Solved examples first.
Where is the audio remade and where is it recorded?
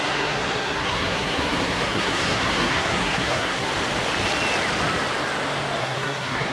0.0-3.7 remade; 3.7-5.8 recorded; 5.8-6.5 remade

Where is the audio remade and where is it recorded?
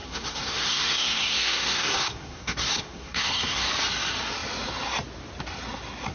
0.0-3.7 remade; 3.7-6.1 recorded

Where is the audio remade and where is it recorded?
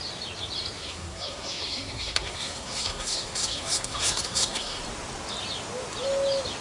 0.0-0.8 recorded; 0.8-4.8 remade; 4.8-6.6 recorded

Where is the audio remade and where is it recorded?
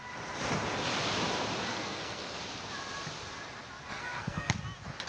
0.0-1.7 recorded; 1.7-2.4 remade; 2.4-3.9 recorded; 3.9-4.5 remade; 4.5-5.1 recorded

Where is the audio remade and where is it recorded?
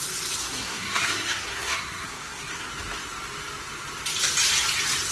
0.0-0.4 recorded; 0.4-2.7 remade; 2.7-5.1 recorded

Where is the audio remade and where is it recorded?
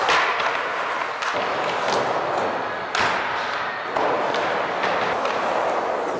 0.0-6.2 recorded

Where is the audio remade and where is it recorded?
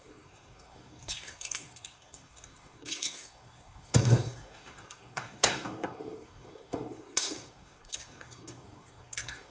0.0-9.5 remade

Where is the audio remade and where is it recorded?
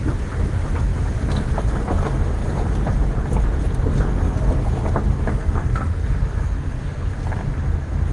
0.0-4.1 recorded; 4.1-4.7 remade; 4.7-5.3 recorded; 5.3-7.1 remade; 7.1-8.1 recorded